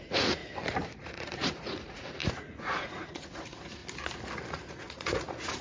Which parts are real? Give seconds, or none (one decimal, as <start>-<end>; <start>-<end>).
0.4-1.0; 3.8-4.4